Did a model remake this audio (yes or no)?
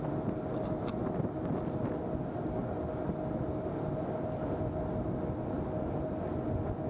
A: no